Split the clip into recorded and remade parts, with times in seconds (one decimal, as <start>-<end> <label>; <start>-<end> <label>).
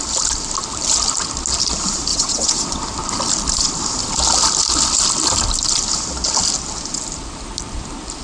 0.0-2.1 recorded; 2.1-2.8 remade; 2.8-8.2 recorded